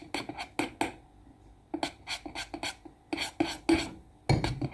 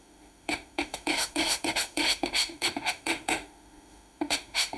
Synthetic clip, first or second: second